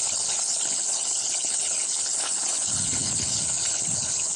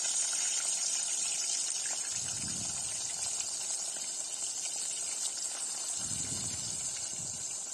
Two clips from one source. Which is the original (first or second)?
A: second